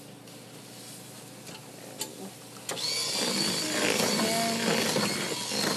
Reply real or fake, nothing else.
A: real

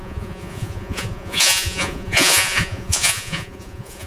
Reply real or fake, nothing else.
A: fake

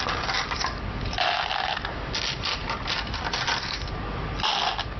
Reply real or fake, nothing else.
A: real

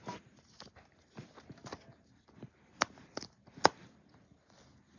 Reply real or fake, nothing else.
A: real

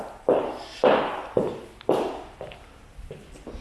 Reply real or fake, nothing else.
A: real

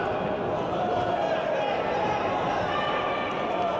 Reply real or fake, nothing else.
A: real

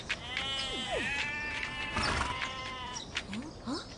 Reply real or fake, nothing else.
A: real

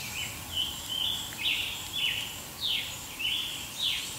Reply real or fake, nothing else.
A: real